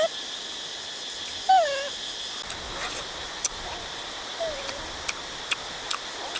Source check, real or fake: real